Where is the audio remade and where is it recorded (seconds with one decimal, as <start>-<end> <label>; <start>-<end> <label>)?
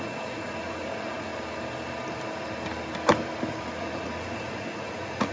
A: 0.0-1.3 remade; 1.3-3.5 recorded; 3.5-5.3 remade